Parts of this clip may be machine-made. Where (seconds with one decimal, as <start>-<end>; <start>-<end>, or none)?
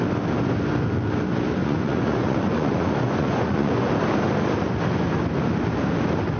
1.6-3.9